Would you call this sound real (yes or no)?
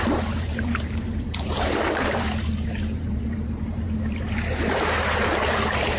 no